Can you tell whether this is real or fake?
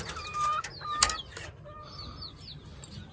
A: real